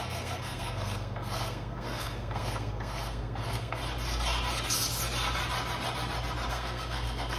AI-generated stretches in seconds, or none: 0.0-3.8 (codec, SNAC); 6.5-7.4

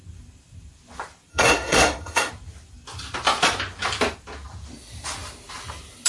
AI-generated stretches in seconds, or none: 1.3-2.3 (codec, SNAC)